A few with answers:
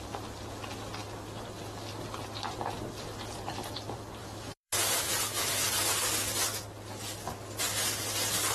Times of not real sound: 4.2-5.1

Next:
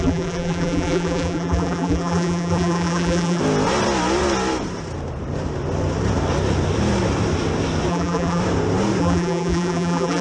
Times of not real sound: 0.0-3.4; 7.9-8.4; 9.0-10.2